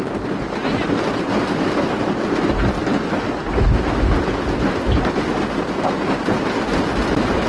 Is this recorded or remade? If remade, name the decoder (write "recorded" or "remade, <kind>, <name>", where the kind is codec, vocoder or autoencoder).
recorded